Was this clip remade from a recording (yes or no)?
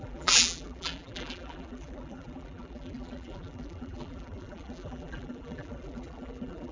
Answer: yes